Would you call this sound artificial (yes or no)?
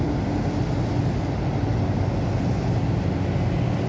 no